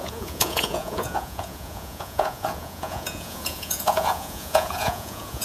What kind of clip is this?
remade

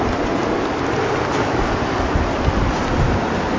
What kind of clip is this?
recorded